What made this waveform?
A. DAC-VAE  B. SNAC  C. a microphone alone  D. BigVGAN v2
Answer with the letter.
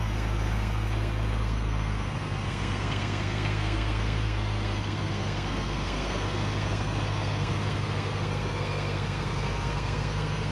B